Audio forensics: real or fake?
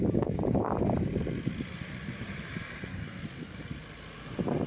real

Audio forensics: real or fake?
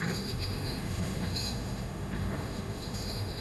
fake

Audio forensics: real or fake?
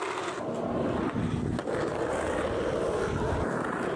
real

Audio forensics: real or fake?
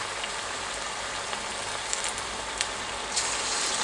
real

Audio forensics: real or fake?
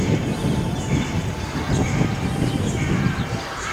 real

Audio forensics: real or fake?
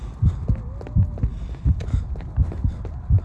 real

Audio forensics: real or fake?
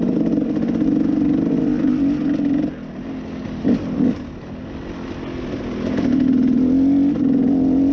real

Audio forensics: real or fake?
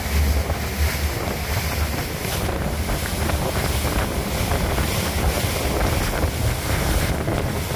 real